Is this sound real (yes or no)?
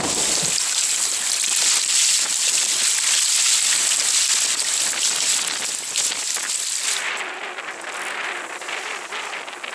yes